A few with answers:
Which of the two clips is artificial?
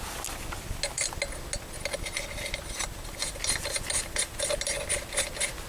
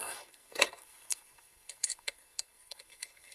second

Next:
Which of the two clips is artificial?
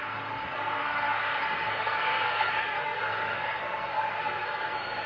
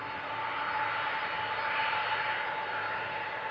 first